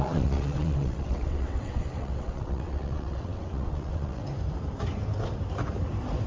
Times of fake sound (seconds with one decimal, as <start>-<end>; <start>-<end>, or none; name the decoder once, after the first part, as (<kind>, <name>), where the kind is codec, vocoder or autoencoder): 0.0-4.2 (vocoder, WaveNeXt)